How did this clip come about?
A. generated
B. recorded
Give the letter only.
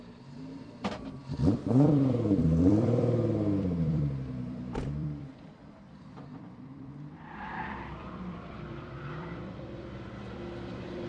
A